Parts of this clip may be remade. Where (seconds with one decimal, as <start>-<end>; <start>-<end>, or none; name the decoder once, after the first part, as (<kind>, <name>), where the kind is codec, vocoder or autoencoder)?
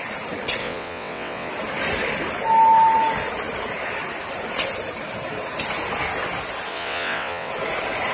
0.6-1.5 (vocoder, WaveNeXt); 6.7-7.5